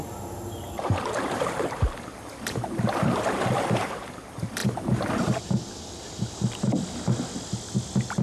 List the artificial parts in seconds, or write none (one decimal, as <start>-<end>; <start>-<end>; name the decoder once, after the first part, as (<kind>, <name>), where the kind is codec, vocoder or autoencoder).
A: 0.0-8.2 (vocoder, BigVGAN v2)